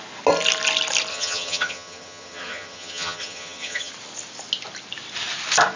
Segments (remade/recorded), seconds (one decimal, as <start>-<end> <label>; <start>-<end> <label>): 0.0-1.1 recorded; 1.1-3.9 remade; 3.9-5.8 recorded